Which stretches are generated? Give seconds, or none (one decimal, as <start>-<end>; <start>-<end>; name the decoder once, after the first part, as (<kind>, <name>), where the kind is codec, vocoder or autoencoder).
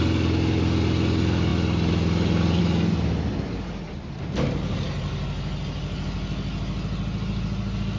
none